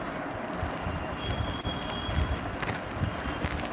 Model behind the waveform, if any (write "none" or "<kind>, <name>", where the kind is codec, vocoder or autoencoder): none